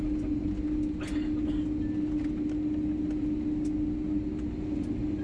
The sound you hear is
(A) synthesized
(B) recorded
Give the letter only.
B